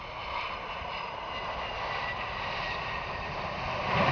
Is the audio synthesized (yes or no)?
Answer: yes